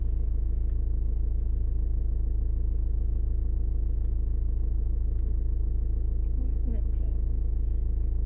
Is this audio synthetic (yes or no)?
no